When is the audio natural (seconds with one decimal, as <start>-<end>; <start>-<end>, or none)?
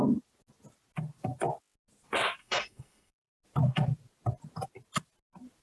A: 0.0-2.4; 3.3-5.6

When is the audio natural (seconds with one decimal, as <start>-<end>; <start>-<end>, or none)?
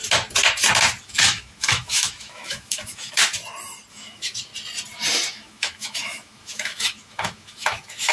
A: 0.0-1.0; 3.2-3.9; 4.5-5.3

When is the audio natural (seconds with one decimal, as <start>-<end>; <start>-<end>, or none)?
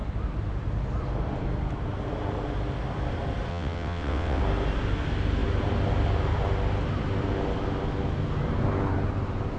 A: 0.0-3.5; 4.4-9.6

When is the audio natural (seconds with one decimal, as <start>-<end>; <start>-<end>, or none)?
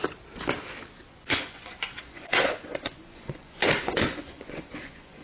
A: 0.0-1.1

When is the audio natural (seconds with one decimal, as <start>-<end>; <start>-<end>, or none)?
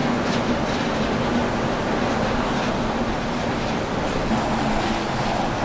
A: 0.5-5.6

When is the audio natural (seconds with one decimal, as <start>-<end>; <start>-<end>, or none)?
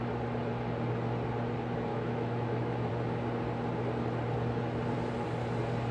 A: 0.0-1.9; 2.9-5.9